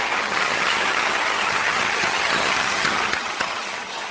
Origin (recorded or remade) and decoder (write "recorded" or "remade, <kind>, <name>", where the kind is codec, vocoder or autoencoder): remade, vocoder, HiFi-GAN